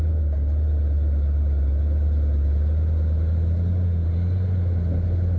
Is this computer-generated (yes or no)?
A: no